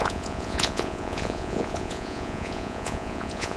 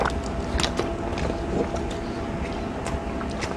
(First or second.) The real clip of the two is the second